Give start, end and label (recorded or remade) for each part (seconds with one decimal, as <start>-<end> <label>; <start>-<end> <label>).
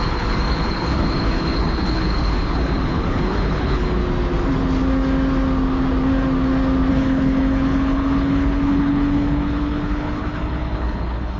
0.0-4.0 remade; 4.0-6.9 recorded; 6.9-11.4 remade